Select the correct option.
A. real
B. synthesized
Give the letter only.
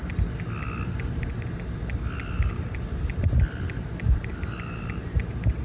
A